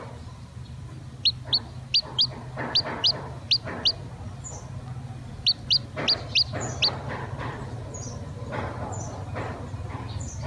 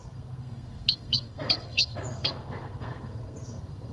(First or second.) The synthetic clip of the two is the second